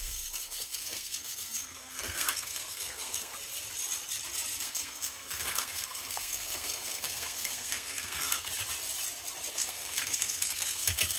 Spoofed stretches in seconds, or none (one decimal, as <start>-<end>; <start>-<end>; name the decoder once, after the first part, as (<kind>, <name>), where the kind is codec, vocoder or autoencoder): 0.0-3.3 (codec, SNAC); 4.6-8.5; 9.5-11.2